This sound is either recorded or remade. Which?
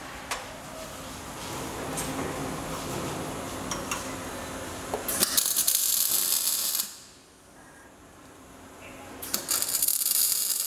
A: recorded